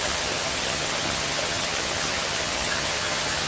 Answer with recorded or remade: remade